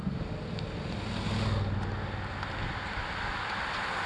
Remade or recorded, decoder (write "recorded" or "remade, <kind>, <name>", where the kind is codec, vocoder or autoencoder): recorded